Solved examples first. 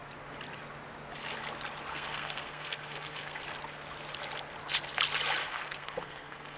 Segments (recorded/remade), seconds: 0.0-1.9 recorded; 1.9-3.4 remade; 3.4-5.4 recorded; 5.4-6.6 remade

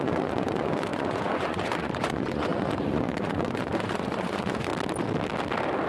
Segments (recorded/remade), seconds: 0.0-4.7 remade; 4.7-5.9 recorded

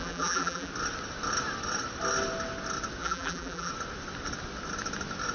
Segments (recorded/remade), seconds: 0.0-0.7 remade; 0.7-3.0 recorded; 3.0-3.7 remade; 3.7-5.3 recorded